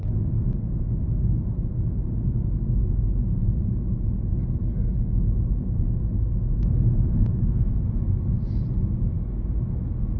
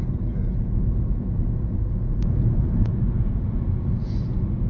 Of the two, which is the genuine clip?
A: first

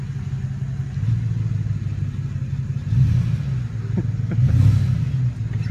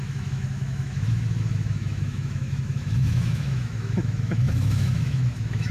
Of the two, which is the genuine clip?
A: first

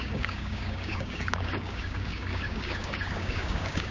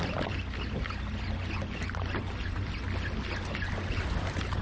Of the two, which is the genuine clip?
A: second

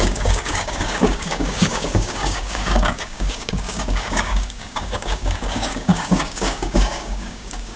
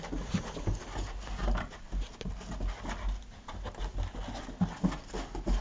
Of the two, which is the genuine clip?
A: second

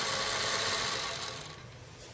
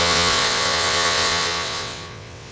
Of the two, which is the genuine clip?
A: first